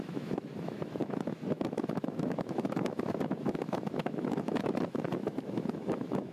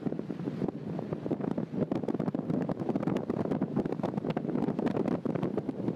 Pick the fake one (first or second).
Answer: first